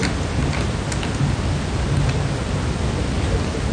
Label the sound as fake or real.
real